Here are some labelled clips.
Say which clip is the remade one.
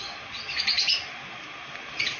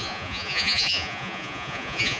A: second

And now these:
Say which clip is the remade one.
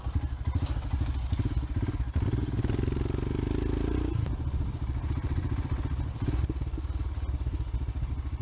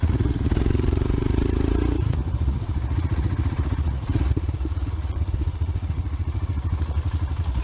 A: second